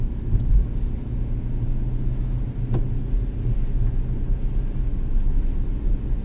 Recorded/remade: recorded